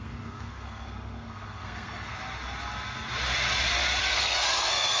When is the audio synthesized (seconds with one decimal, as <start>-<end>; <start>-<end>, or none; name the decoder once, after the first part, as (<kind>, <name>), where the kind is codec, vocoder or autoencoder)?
0.0-2.1 (codec, SNAC); 4.0-5.0